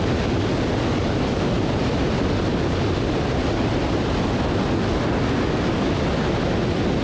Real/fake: real